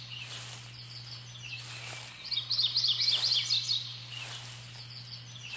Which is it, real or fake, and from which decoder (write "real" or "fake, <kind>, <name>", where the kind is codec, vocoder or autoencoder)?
fake, vocoder, BigVGAN v2